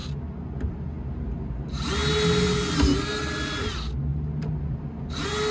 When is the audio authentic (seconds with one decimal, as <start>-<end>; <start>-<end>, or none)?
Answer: 0.0-5.5